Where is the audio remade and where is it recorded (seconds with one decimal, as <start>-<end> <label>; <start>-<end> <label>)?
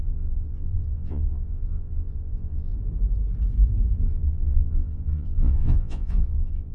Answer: 0.0-2.7 remade; 2.7-4.1 recorded; 4.1-6.7 remade